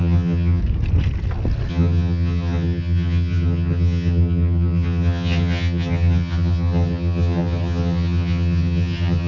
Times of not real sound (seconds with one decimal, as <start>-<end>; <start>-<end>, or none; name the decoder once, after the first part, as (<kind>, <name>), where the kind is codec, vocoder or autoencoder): 0.0-0.6 (vocoder, HiFi-GAN); 1.7-9.3

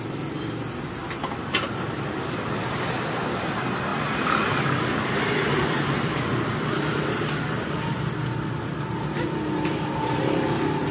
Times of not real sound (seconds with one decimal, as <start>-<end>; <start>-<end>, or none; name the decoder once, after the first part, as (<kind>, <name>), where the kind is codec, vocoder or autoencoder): none

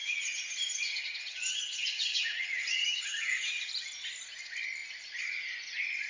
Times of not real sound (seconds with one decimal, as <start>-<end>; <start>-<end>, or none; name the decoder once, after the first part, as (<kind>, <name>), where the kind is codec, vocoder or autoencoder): 0.0-3.7 (vocoder, HiFi-GAN)

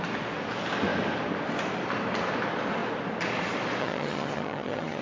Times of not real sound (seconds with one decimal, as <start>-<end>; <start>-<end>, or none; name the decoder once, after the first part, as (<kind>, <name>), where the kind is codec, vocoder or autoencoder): 3.8-5.0 (vocoder, HiFi-GAN)